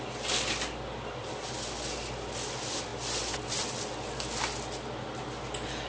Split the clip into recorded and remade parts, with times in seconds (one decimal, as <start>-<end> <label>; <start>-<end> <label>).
0.0-5.9 recorded